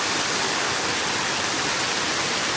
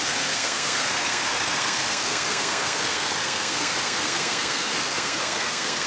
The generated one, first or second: second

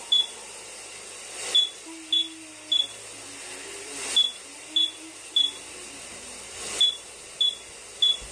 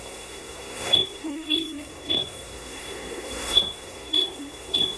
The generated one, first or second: second